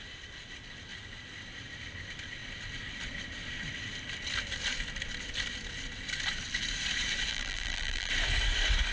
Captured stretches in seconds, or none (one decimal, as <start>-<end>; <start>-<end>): 0.0-7.3; 8.1-8.9